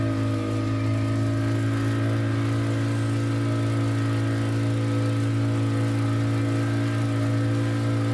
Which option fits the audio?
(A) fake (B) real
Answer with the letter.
B